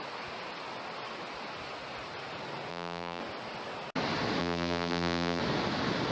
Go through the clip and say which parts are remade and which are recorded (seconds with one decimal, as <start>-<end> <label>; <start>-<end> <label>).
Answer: 0.0-2.7 recorded; 2.7-3.2 remade; 3.2-4.4 recorded; 4.4-5.4 remade; 5.4-6.1 recorded